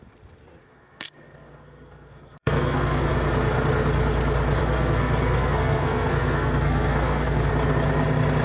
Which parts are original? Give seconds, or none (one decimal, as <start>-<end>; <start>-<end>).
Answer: 0.0-0.6; 3.1-4.6; 7.5-8.4